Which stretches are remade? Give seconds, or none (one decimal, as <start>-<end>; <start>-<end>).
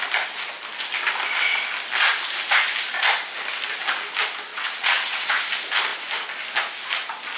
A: 4.5-5.4